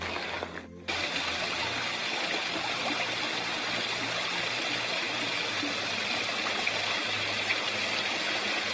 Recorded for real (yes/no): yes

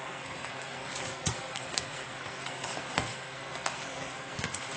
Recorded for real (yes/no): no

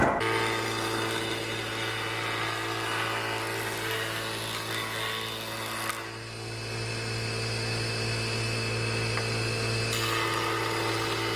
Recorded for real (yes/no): yes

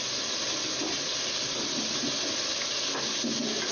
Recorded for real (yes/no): yes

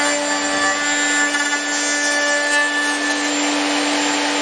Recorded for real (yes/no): yes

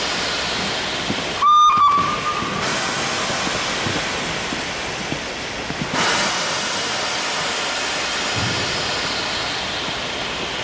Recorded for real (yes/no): yes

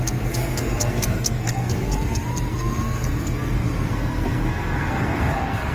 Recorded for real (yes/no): no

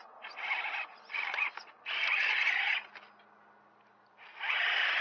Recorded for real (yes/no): yes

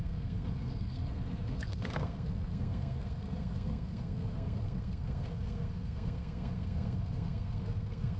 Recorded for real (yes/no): no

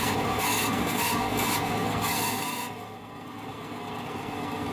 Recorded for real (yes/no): no